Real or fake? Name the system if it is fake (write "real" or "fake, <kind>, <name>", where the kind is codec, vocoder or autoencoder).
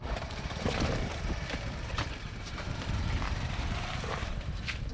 fake, vocoder, BigVGAN v2